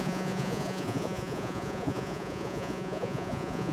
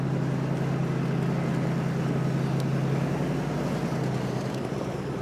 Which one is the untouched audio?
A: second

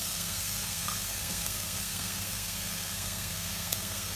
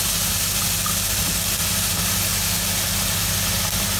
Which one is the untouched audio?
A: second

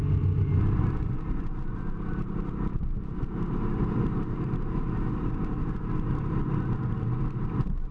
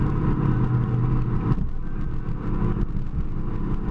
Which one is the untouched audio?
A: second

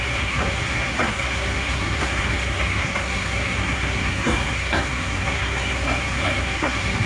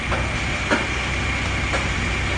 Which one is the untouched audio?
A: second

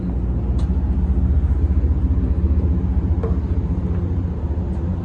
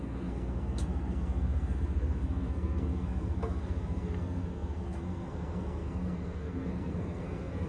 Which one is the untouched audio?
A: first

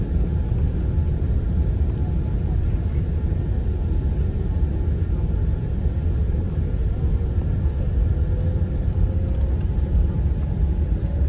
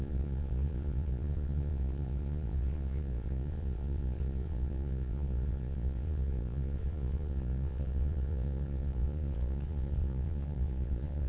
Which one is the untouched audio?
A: first